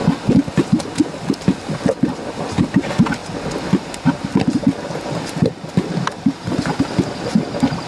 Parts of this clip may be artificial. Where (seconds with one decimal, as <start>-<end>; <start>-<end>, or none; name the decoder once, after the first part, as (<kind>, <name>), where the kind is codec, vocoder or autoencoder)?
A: none